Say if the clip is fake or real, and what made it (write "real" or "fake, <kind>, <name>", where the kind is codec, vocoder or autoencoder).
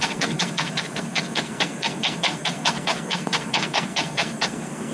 fake, codec, SNAC